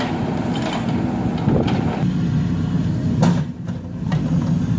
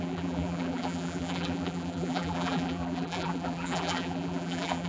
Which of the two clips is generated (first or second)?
second